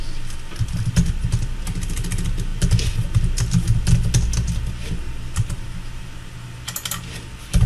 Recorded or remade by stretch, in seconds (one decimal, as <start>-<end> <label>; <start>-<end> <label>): 0.0-7.7 recorded